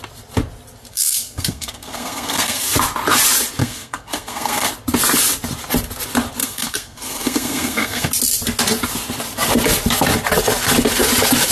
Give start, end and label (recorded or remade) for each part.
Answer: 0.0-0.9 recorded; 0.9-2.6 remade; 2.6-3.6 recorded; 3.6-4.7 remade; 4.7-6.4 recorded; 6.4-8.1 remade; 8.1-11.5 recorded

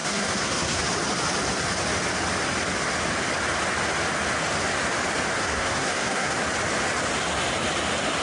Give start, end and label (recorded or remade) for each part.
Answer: 0.0-0.8 remade; 0.8-5.4 recorded; 5.4-6.4 remade; 6.4-8.2 recorded